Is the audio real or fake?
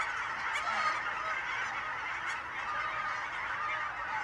real